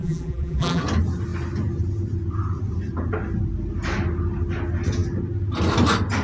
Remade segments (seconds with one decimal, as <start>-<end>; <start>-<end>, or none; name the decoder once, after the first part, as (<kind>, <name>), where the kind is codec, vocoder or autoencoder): 0.0-0.8 (vocoder, BigVGAN v2)